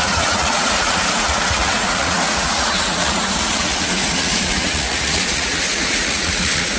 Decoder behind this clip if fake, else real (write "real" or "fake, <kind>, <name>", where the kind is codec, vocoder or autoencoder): fake, vocoder, Vocos